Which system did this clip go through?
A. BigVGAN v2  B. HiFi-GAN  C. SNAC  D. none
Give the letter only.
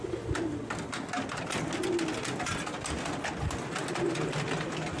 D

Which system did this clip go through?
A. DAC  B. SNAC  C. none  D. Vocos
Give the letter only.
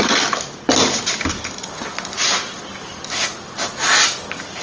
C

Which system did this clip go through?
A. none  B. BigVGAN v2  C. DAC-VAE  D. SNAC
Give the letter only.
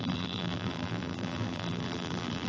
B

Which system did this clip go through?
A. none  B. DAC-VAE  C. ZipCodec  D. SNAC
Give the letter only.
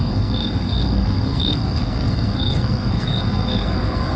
D